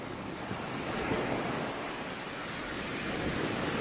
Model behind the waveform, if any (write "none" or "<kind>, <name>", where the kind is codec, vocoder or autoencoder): codec, DAC